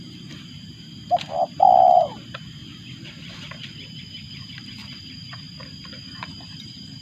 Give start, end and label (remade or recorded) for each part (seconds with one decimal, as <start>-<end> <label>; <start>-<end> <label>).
0.0-2.6 remade; 2.6-3.2 recorded; 3.2-4.8 remade; 4.8-6.1 recorded; 6.1-7.0 remade